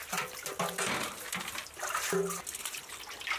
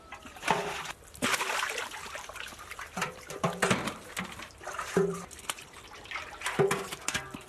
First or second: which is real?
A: first